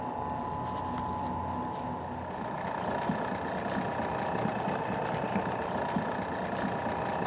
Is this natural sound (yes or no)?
yes